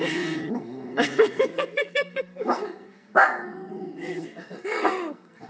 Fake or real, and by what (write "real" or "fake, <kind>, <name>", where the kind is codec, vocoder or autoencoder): fake, codec, SNAC